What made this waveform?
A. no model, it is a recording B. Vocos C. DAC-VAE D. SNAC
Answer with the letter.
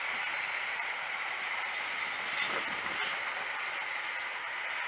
A